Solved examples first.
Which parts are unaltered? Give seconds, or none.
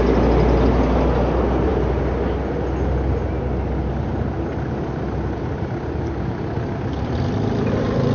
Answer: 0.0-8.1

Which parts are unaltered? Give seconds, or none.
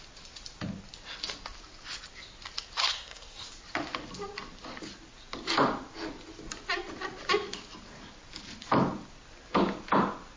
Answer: 0.0-2.8; 3.5-10.4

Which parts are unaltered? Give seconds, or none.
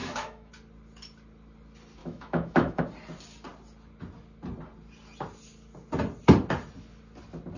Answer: 0.5-2.0; 2.8-7.6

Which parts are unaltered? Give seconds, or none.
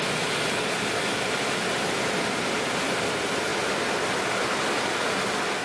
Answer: 0.0-5.6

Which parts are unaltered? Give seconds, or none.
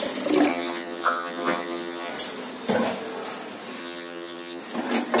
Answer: 0.0-0.5; 2.1-3.8; 4.6-5.2